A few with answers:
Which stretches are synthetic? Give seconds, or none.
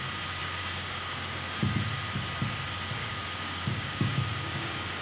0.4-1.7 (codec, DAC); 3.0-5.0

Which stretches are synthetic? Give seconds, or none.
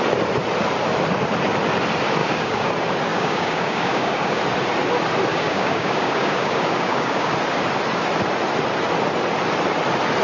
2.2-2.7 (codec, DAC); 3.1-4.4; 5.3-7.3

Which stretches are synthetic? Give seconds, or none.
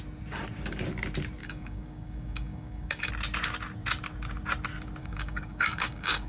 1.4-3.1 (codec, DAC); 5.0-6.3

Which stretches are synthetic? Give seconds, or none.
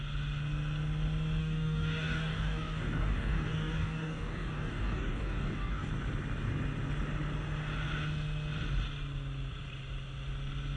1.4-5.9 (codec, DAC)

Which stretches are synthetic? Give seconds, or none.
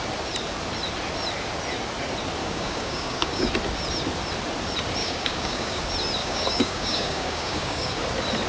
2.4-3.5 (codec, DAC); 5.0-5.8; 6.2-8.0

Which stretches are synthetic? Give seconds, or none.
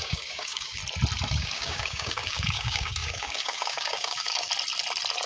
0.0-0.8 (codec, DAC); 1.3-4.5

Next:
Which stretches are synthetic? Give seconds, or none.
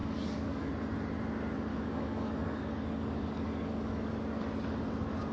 0.0-0.7 (codec, DAC); 1.7-4.1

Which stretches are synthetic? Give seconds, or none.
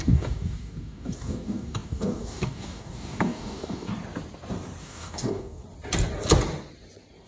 0.0-3.9 (codec, DAC); 4.8-5.6